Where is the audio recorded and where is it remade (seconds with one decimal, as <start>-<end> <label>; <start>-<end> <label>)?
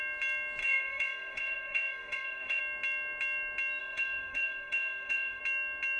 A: 0.0-0.6 recorded; 0.6-2.6 remade; 2.6-3.8 recorded; 3.8-5.4 remade; 5.4-6.0 recorded